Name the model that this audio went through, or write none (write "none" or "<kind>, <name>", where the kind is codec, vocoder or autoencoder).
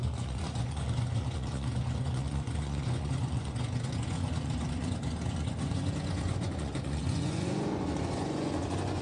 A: vocoder, Vocos